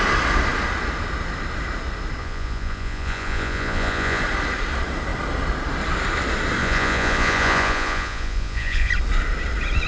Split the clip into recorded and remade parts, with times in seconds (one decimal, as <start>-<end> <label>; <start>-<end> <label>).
0.0-2.2 recorded; 2.2-4.2 remade; 4.2-6.6 recorded; 6.6-8.9 remade; 8.9-9.9 recorded